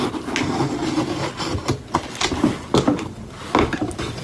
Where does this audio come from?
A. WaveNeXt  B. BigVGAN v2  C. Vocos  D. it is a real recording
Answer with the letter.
D